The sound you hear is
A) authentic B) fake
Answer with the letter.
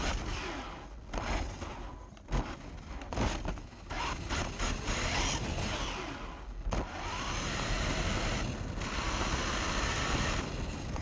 A